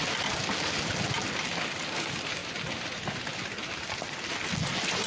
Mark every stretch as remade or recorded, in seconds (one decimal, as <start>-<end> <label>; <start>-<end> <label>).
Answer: 0.0-5.1 recorded

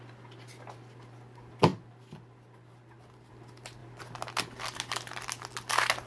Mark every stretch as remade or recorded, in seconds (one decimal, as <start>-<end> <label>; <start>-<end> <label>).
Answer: 0.0-6.1 recorded

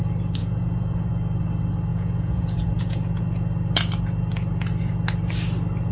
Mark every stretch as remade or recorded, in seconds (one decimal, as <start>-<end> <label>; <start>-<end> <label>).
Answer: 0.0-0.4 recorded; 0.4-1.1 remade; 1.1-1.9 recorded; 1.9-3.2 remade; 3.2-5.9 recorded

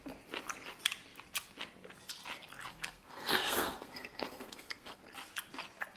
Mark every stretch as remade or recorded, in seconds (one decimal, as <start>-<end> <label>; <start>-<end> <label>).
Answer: 0.0-2.7 recorded; 2.7-5.0 remade; 5.0-6.0 recorded